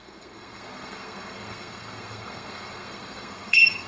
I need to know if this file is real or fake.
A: fake